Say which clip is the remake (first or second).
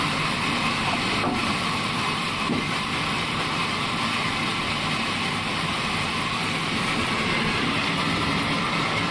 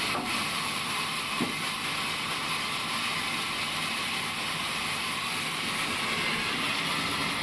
first